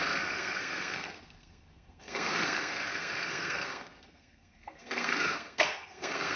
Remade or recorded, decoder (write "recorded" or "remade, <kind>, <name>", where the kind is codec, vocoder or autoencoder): remade, codec, SNAC